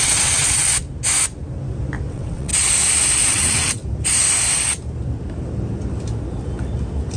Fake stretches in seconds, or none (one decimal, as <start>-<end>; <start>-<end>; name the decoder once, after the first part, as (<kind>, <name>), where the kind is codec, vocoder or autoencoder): 0.0-0.7 (vocoder, WaveNeXt); 2.1-2.5; 3.3-3.8